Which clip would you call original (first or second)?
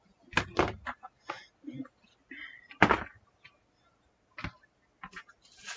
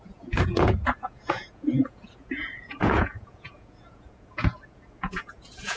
first